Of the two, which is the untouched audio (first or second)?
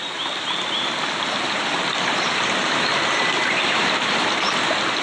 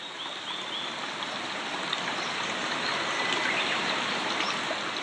second